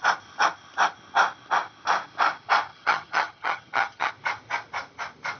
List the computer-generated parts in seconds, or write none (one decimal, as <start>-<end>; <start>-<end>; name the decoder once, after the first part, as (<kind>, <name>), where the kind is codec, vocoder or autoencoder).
2.7-4.1 (vocoder, HiFi-GAN)